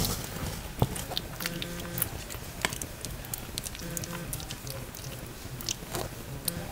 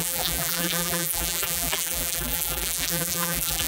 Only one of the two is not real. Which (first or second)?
second